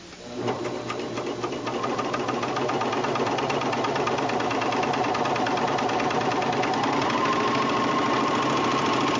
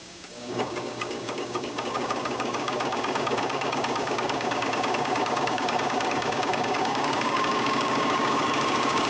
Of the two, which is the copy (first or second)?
second